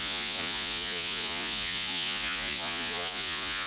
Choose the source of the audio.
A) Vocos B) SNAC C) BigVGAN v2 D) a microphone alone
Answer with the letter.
A